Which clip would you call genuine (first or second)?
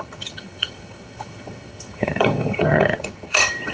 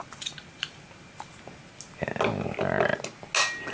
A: second